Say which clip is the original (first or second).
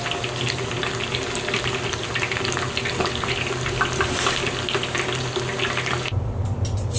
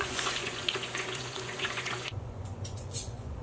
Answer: first